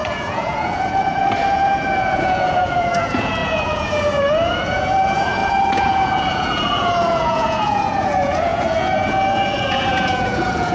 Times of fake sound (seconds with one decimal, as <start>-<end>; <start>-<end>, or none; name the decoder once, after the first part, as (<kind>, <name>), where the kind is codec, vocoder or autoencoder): 0.0-10.7 (vocoder, Vocos)